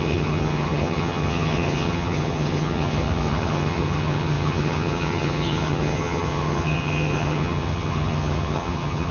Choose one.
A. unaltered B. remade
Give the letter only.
B